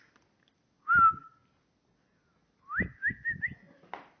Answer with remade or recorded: recorded